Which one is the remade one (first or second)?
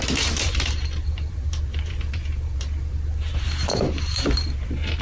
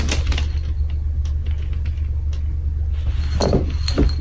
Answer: first